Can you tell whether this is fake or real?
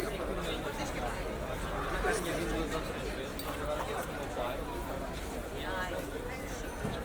real